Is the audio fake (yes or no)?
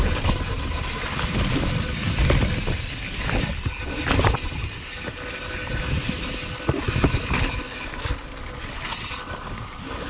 no